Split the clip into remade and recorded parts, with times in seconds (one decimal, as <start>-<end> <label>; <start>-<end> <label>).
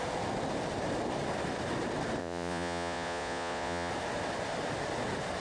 0.0-2.2 recorded; 2.2-3.9 remade; 3.9-5.4 recorded